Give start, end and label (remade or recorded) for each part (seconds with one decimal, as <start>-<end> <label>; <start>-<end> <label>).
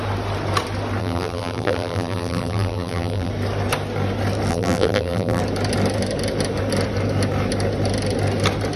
0.0-1.0 recorded; 1.0-3.3 remade; 3.3-4.5 recorded; 4.5-5.4 remade; 5.4-8.8 recorded